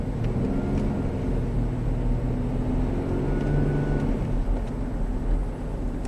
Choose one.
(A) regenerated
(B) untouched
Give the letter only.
B